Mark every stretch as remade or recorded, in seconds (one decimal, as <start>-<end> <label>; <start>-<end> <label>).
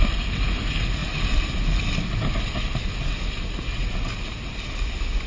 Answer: 0.0-5.3 recorded